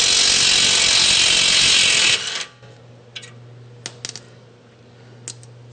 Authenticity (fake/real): real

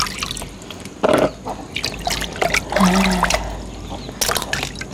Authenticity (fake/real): real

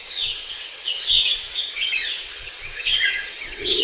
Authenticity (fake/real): fake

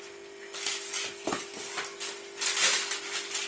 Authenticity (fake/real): real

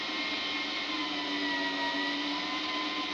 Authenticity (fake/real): real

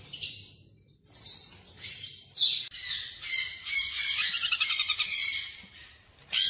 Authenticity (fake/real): fake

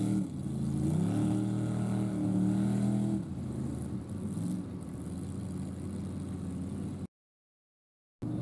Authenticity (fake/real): real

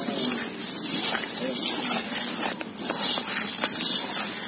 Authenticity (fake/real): real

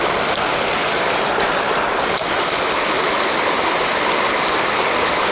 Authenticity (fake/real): real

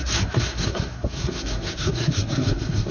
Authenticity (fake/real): fake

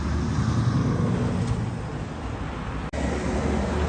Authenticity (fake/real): real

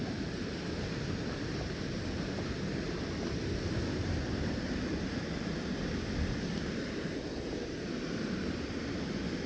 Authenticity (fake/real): real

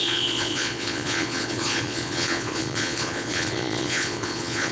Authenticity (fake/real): fake